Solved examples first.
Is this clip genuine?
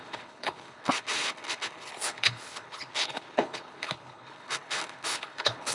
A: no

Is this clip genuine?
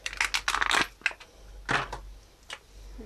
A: yes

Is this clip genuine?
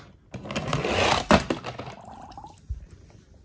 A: yes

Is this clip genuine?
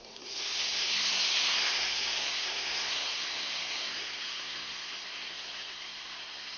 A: no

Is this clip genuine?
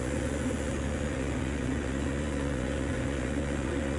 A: no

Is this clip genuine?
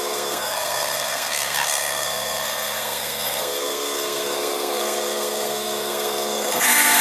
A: no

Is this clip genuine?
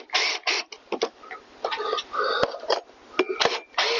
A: yes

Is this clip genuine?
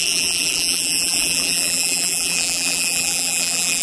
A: no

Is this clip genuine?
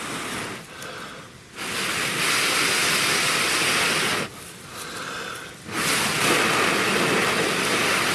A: yes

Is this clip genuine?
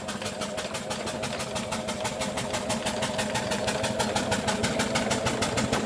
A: yes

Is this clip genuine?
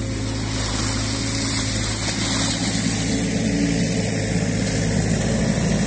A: yes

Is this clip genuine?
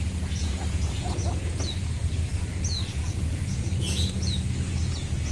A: no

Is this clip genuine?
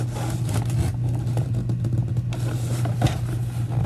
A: yes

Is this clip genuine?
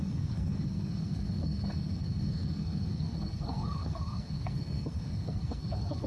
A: no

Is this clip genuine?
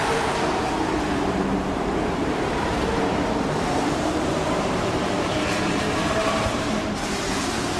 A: no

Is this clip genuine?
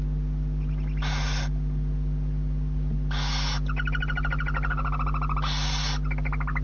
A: yes